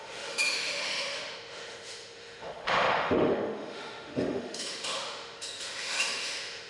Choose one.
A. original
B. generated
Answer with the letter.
B